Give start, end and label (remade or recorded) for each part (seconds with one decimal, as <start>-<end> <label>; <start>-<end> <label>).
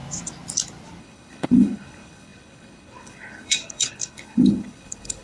0.0-1.0 recorded; 1.0-5.2 remade